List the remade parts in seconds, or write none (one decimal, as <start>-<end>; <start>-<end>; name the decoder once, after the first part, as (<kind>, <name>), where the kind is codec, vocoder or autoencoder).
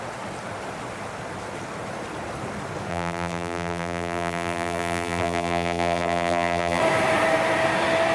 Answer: 2.9-6.8 (vocoder, BigVGAN v2)